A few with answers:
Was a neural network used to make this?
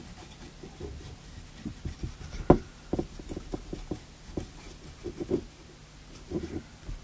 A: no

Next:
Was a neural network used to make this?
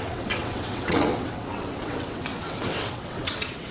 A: yes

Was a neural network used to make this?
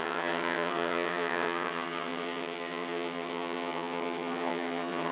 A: yes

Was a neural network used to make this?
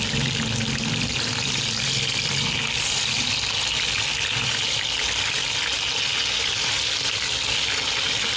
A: no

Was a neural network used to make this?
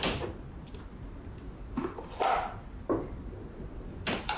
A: no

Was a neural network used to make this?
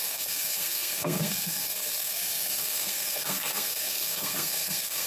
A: yes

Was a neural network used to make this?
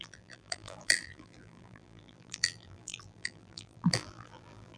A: yes